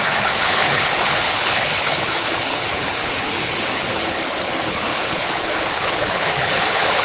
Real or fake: fake